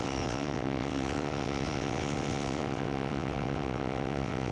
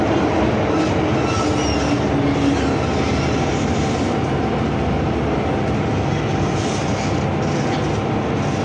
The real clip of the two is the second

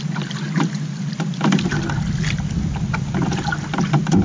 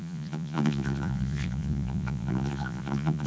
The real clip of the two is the first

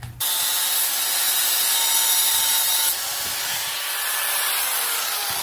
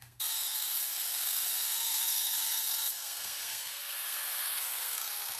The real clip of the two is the first